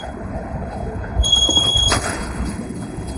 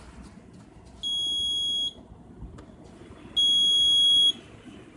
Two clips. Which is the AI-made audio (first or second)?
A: first